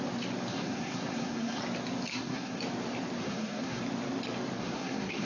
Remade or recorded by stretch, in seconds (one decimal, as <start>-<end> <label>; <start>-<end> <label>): 0.0-0.5 recorded; 0.5-1.6 remade; 1.6-2.1 recorded; 2.1-2.6 remade; 2.6-3.2 recorded; 3.2-3.8 remade; 3.8-4.6 recorded; 4.6-5.3 remade